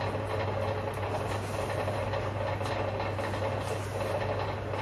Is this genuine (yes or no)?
yes